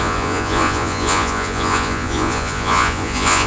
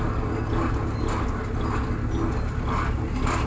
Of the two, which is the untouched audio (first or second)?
second